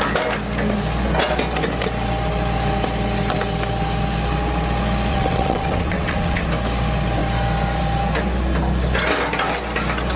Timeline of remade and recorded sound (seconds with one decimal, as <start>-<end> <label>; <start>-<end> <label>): 0.0-5.1 recorded; 5.1-6.5 remade; 6.5-10.2 recorded